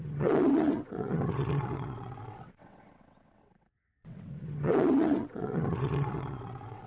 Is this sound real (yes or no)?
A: no